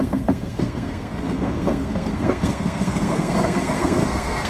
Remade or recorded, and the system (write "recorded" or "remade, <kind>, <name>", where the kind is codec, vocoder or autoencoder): remade, codec, SNAC